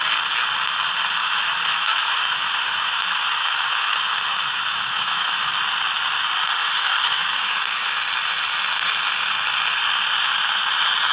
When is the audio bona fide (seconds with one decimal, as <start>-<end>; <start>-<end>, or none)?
0.0-1.2; 5.5-6.6; 8.0-11.1